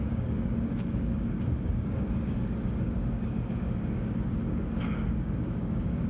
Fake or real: fake